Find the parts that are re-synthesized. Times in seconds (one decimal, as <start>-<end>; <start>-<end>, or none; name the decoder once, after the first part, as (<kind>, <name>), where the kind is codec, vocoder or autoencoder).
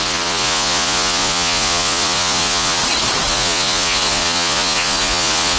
0.0-2.8 (vocoder, Vocos); 3.3-5.6